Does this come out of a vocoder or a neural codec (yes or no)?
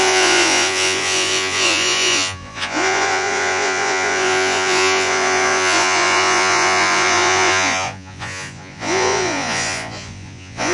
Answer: yes